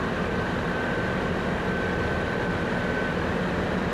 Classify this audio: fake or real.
fake